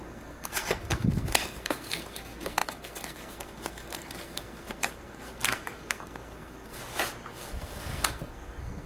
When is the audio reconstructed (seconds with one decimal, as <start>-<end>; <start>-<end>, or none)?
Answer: 0.0-6.8; 7.3-8.9

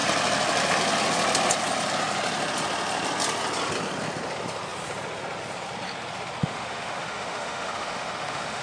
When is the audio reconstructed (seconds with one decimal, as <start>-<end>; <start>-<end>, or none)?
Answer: 6.4-8.6